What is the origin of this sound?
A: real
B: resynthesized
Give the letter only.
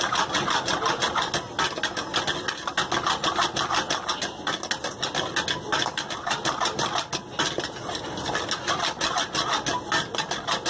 A